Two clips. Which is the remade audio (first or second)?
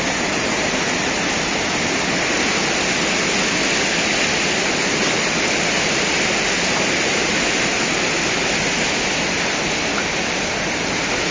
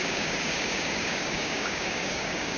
second